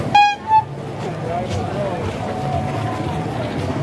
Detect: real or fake real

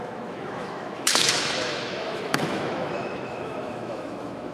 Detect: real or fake fake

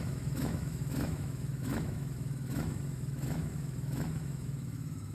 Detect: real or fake fake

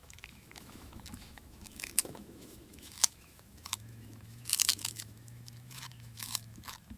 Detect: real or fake fake